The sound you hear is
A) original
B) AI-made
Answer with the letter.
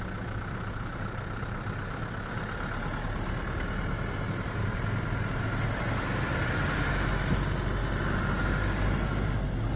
A